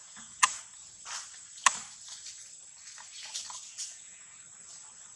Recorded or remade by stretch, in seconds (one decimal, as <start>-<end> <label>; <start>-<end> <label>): 0.0-0.5 remade; 0.5-3.7 recorded; 3.7-4.4 remade; 4.4-5.2 recorded